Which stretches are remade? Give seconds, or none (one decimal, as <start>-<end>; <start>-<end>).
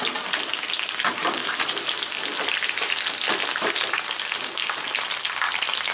none